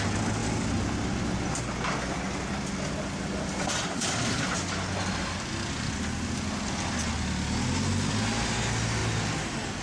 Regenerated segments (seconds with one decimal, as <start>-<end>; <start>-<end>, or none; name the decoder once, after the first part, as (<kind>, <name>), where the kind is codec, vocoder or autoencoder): none